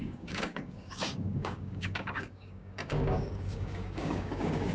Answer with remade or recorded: remade